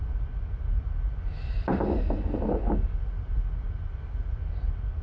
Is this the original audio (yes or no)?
yes